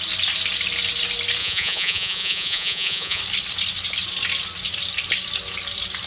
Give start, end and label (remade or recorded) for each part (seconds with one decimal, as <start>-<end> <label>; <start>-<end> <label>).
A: 0.0-1.4 recorded; 1.4-3.2 remade; 3.2-6.1 recorded